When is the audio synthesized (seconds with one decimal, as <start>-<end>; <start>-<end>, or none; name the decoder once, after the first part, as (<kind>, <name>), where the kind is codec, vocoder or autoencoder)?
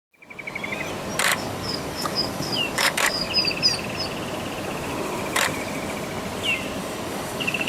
1.3-3.3 (codec, DAC); 6.8-7.7